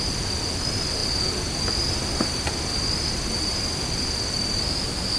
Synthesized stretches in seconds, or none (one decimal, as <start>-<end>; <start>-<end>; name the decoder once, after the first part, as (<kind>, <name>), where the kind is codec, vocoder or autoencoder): none